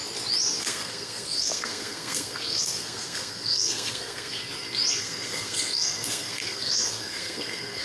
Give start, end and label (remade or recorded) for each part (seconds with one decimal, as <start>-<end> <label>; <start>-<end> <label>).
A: 0.0-0.6 recorded; 0.6-4.4 remade; 4.4-5.0 recorded; 5.0-7.8 remade